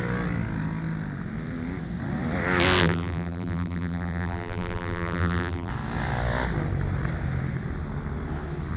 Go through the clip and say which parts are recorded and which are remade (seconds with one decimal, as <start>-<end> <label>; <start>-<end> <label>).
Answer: 0.0-2.8 recorded; 2.8-5.7 remade; 5.7-8.8 recorded